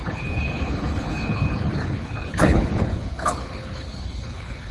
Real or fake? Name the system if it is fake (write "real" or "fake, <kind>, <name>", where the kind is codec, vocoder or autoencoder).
fake, codec, HILCodec